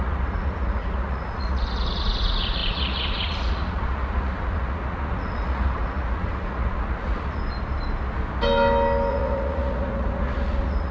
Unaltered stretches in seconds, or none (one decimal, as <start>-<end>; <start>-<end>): 7.4-9.1